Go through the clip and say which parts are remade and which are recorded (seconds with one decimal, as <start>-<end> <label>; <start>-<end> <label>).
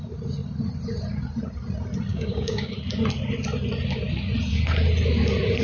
0.0-2.1 recorded; 2.1-2.7 remade; 2.7-5.6 recorded